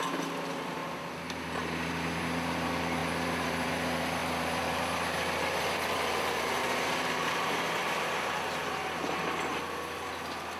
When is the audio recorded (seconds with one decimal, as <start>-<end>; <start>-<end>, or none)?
0.0-3.0; 3.7-4.2; 8.0-10.6